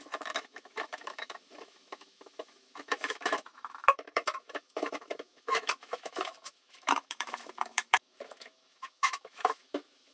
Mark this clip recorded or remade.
remade